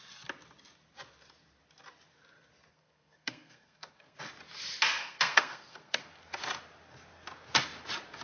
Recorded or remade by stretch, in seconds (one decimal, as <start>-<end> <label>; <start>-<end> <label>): 0.0-2.7 recorded; 2.7-4.2 remade; 4.2-5.0 recorded; 5.0-6.1 remade; 6.1-8.2 recorded